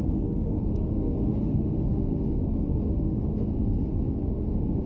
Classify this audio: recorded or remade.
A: remade